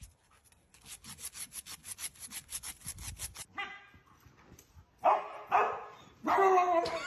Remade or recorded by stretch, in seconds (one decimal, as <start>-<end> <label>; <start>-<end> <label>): 0.0-7.1 recorded